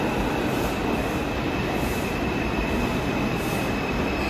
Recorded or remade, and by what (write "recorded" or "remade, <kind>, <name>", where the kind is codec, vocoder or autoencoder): recorded